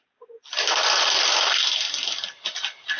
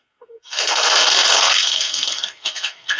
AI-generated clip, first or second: second